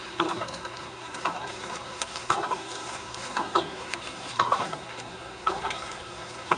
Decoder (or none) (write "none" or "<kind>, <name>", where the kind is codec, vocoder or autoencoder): codec, SNAC